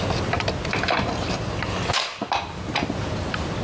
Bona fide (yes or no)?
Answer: yes